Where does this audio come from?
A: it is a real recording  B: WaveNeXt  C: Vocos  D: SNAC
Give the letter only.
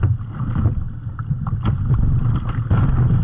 A